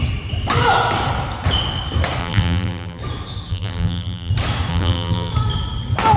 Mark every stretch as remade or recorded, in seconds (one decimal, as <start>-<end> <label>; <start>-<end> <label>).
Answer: 0.0-2.2 recorded; 2.2-3.0 remade; 3.0-3.5 recorded; 3.5-4.3 remade; 4.3-4.7 recorded; 4.7-5.3 remade; 5.3-6.2 recorded

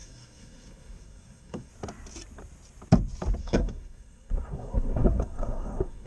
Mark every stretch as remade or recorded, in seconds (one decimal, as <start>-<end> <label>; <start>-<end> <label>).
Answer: 0.0-1.7 remade; 1.7-3.4 recorded; 3.4-6.1 remade